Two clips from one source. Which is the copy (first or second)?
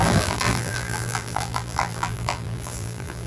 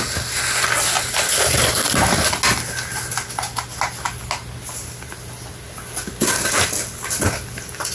first